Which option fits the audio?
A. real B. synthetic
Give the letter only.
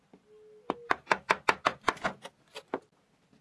A